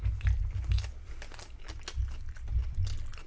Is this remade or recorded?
recorded